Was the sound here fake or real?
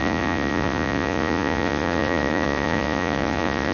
fake